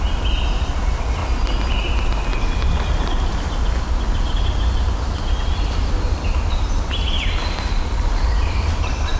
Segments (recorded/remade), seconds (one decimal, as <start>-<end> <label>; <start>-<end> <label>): 0.0-9.2 recorded